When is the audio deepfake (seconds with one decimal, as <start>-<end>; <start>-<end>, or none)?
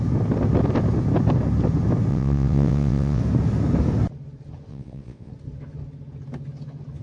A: 2.1-3.2; 4.7-5.3